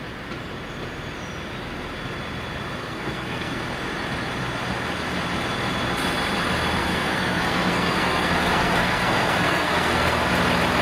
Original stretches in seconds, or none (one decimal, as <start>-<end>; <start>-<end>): 0.0-2.8; 3.6-6.8; 10.3-10.8